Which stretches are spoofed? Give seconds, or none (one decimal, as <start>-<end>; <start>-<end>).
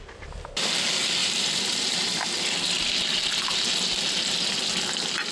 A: 1.2-2.4